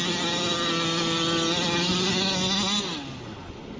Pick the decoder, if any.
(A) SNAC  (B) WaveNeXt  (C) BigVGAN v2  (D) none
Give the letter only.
D